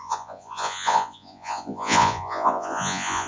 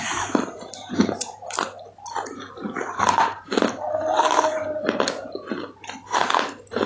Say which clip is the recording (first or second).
second